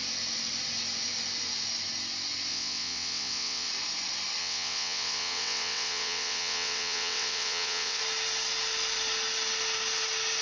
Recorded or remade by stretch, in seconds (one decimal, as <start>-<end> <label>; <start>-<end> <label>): 0.0-2.5 recorded; 2.5-3.7 remade; 3.7-4.4 recorded; 4.4-8.0 remade; 8.0-10.4 recorded